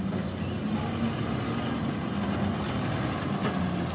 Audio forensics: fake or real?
real